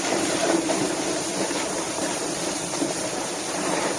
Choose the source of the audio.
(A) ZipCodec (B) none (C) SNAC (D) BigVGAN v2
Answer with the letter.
D